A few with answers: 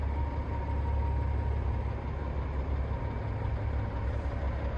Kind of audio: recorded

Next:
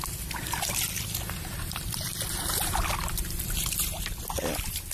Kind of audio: remade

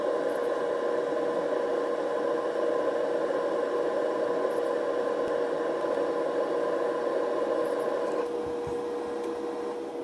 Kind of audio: recorded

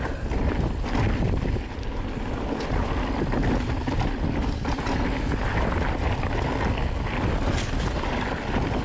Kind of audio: recorded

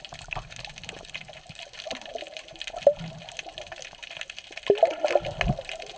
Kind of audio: recorded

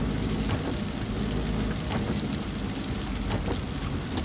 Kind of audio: recorded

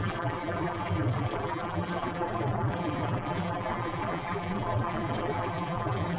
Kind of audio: remade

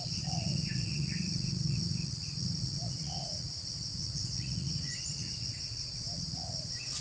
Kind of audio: remade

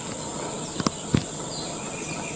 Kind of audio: recorded